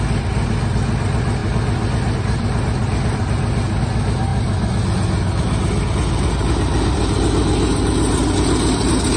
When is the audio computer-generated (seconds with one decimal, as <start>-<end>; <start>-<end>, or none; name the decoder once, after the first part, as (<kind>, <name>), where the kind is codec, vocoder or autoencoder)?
none